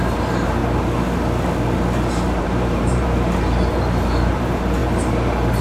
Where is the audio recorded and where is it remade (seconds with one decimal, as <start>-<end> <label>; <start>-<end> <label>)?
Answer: 0.0-0.6 remade; 0.6-2.4 recorded; 2.4-4.8 remade; 4.8-5.6 recorded